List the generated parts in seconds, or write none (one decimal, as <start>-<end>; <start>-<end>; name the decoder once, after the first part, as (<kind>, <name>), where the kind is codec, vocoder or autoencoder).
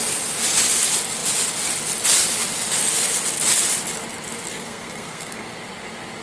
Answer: 4.5-5.6 (codec, SNAC)